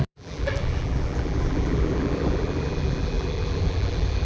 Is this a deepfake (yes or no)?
yes